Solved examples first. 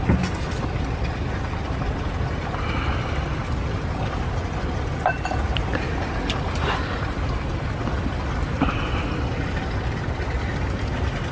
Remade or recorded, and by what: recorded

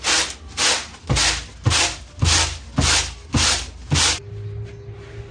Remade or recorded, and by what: recorded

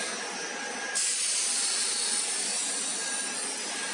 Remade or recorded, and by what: recorded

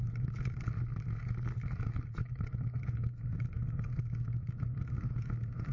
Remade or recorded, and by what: remade, autoencoder, DAC-VAE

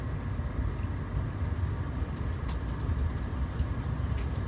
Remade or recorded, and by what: recorded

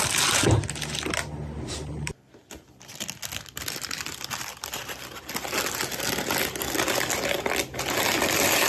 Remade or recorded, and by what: recorded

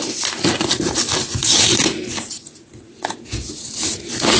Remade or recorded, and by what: recorded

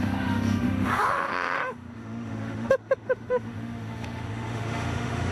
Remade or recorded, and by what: remade, autoencoder, DAC-VAE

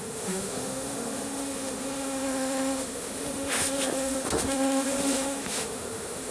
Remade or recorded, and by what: remade, autoencoder, DAC-VAE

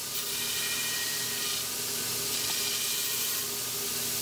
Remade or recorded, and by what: recorded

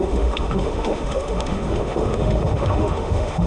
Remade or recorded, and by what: remade, autoencoder, DAC-VAE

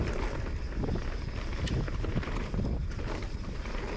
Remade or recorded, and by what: recorded